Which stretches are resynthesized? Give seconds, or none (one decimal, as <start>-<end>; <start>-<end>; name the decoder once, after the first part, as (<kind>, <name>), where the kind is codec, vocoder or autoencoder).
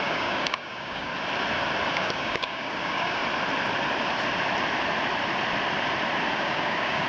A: 0.0-1.1 (codec, DAC); 1.9-3.2; 6.3-7.1